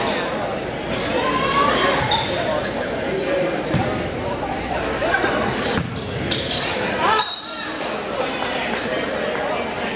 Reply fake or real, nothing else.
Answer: fake